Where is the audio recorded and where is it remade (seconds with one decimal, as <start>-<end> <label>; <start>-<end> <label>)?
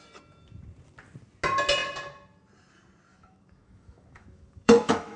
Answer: 0.0-3.1 recorded; 3.1-5.2 remade